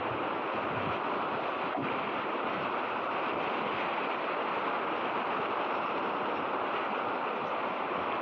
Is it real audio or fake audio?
real